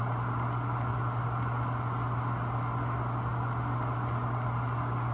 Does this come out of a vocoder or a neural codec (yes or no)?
no